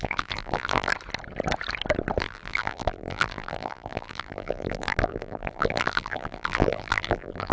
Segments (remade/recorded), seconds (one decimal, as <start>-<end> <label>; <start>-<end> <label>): 0.0-0.9 remade; 0.9-2.2 recorded; 2.2-7.5 remade